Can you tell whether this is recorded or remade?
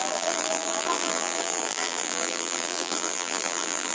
remade